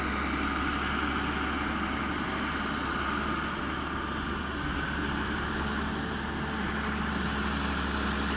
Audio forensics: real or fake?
real